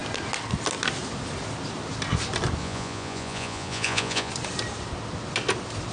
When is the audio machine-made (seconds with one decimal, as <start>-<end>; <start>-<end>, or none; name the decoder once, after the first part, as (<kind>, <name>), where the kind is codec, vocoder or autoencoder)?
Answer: 2.6-4.3 (vocoder, Vocos)